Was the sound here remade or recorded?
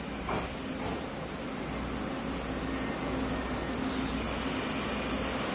recorded